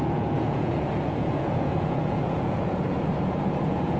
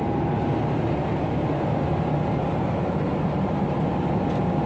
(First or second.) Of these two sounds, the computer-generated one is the first